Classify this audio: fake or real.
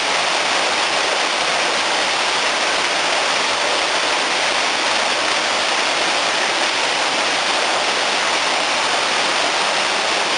real